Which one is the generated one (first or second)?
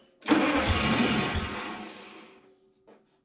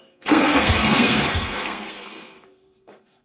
second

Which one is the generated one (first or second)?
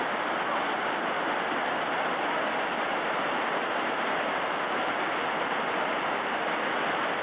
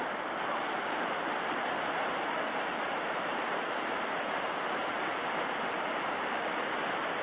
second